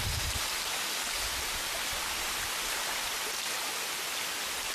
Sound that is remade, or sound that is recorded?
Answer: recorded